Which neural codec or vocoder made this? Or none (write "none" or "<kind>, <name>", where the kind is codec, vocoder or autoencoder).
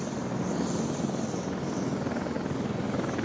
none